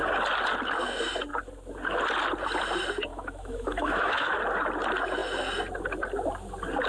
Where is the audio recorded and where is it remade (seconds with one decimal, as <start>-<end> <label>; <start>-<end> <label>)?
0.0-3.1 recorded; 3.1-4.4 remade; 4.4-6.9 recorded